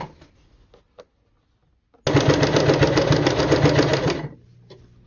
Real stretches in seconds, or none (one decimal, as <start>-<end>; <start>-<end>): 0.0-5.1